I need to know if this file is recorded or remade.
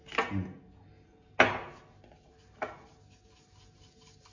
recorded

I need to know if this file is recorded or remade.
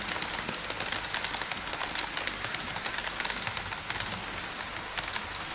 recorded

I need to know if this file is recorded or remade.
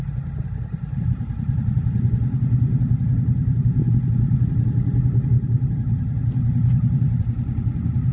recorded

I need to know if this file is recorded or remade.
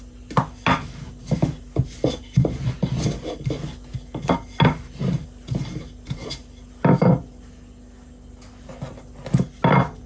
recorded